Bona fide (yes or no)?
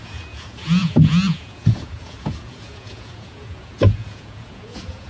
no